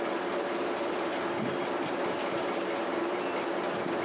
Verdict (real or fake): real